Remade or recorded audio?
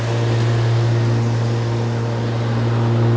recorded